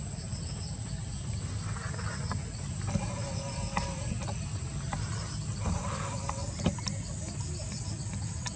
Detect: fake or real real